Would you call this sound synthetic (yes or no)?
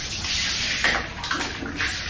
no